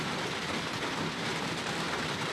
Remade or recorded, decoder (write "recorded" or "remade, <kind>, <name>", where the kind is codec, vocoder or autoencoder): recorded